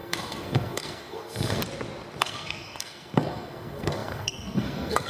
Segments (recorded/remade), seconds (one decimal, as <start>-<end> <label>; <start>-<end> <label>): 0.0-1.6 remade; 1.6-2.2 recorded; 2.2-5.1 remade